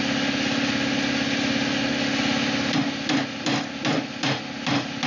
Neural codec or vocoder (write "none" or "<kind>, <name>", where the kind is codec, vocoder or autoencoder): none